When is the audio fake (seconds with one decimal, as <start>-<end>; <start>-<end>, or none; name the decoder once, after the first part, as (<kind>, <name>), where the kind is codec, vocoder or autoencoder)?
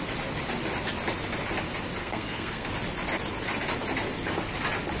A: 2.0-2.7 (codec, SNAC)